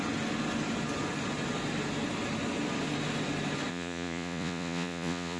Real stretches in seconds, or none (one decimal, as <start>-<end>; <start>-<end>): 0.0-3.7